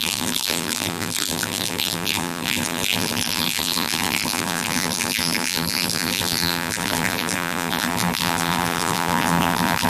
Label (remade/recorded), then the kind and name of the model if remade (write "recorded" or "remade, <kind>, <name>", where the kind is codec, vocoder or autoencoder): remade, vocoder, BigVGAN v2